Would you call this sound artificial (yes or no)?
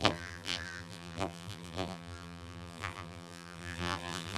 yes